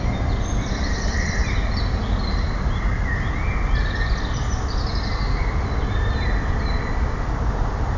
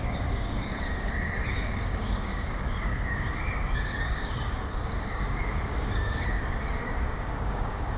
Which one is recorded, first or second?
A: first